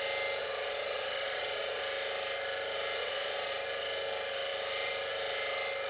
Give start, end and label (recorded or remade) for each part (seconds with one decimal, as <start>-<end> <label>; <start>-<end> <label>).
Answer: 0.0-0.4 recorded; 0.4-1.8 remade; 1.8-3.0 recorded; 3.0-3.5 remade; 3.5-5.9 recorded